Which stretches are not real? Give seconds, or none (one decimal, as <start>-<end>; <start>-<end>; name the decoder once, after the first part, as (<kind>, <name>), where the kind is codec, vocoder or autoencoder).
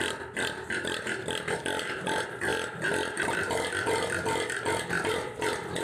0.0-2.5 (vocoder, BigVGAN v2); 5.1-5.8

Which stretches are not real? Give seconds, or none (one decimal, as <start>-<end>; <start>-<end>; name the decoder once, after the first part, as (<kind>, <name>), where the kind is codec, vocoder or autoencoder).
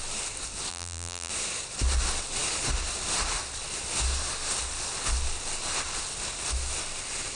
0.7-1.3 (vocoder, BigVGAN v2)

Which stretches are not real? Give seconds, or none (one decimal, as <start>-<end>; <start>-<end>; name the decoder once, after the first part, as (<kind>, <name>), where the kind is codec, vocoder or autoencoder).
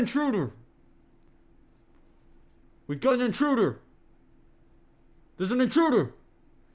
none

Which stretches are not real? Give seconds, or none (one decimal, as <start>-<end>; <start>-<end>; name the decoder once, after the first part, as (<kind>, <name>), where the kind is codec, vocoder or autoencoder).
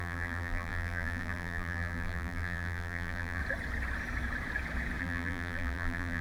0.0-3.4 (vocoder, BigVGAN v2); 5.0-6.2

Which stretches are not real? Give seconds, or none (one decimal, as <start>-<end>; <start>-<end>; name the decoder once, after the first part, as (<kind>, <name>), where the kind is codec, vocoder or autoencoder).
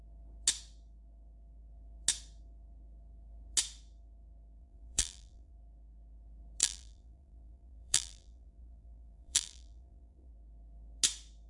4.6-5.5 (vocoder, BigVGAN v2); 6.6-10.3